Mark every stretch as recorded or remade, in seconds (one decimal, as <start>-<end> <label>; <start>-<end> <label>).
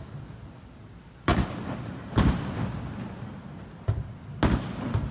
0.0-5.1 recorded